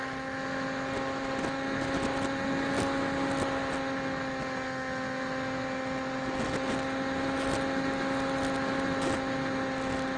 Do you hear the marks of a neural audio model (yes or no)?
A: no